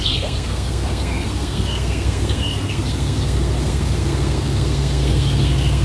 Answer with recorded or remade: remade